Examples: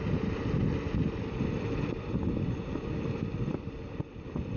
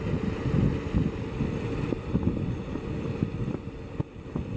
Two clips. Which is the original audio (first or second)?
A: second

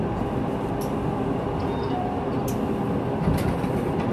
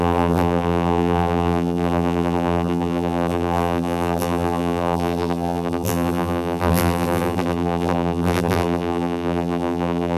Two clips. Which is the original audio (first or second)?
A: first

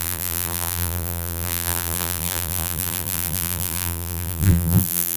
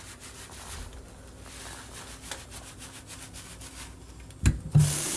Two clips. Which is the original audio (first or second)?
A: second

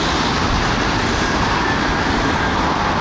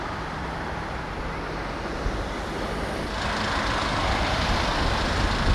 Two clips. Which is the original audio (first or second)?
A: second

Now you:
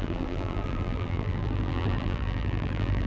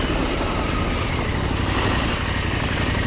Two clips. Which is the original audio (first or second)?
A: second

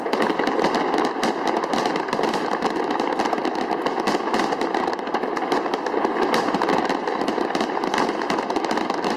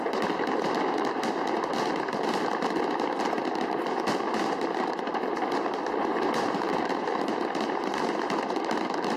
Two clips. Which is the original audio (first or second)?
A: first